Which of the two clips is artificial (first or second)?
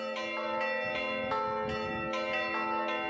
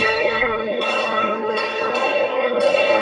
second